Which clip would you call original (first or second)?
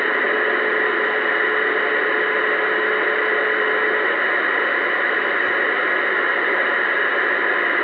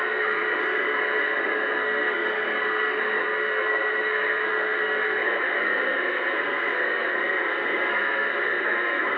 first